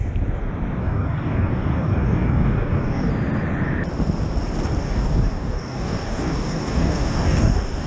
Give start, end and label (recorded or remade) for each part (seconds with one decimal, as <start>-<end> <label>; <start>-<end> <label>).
0.0-0.8 recorded; 0.8-3.1 remade; 3.1-4.8 recorded; 4.8-7.9 remade